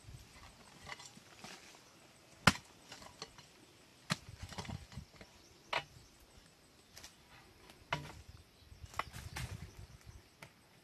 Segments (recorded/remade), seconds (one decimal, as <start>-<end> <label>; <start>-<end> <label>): 0.0-10.8 recorded